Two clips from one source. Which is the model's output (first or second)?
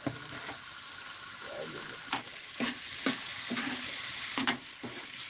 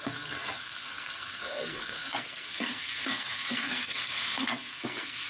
second